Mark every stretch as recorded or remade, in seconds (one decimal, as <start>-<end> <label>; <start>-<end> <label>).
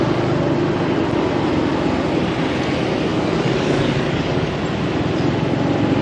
0.0-3.1 recorded; 3.1-4.5 remade; 4.5-6.0 recorded